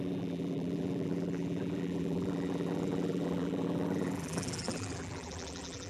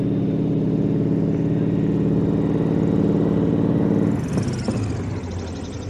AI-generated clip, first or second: first